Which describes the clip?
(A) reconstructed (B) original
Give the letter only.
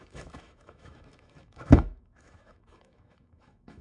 A